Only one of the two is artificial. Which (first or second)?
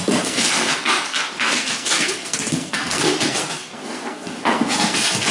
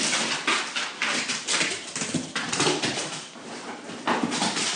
first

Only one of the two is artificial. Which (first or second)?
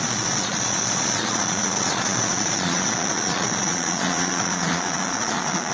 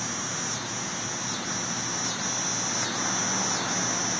first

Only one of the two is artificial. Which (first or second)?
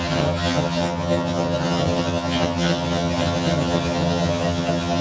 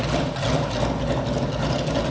first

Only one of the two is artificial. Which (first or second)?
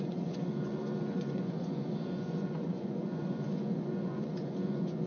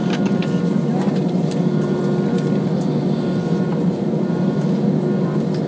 first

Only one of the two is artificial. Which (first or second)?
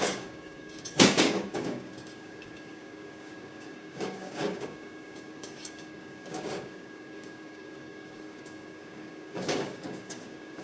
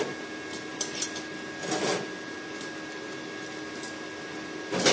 first